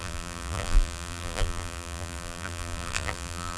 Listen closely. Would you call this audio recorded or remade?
remade